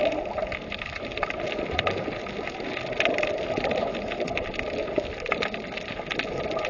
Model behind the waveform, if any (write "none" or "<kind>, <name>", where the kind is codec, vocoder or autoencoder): none